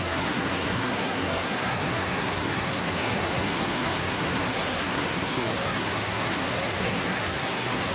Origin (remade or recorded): remade